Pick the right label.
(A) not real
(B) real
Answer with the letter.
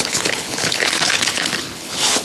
A